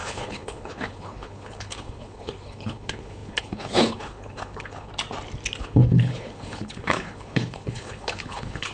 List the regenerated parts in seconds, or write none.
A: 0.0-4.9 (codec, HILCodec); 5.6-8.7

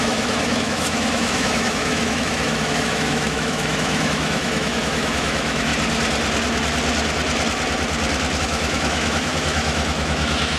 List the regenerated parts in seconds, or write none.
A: 0.0-5.7 (autoencoder, DAC-VAE); 8.4-10.6

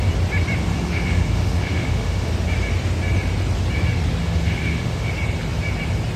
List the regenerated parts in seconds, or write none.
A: 0.7-2.3 (autoencoder, DAC-VAE); 4.2-5.1